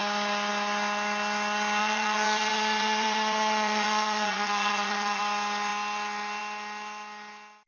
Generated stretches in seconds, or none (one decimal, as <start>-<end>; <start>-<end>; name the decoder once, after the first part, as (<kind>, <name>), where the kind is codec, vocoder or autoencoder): 1.8-5.2 (vocoder, Vocos)